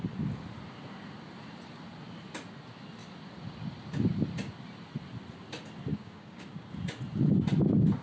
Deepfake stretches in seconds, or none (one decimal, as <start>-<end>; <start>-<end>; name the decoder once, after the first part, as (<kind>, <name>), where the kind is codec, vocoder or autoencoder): 5.9-6.7 (codec, DAC)